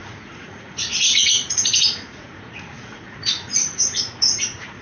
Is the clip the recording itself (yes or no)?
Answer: no